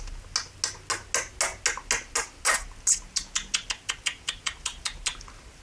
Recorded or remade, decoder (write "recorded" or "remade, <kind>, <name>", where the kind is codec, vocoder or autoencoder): recorded